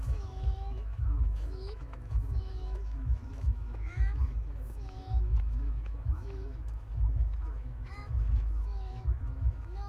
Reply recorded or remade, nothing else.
remade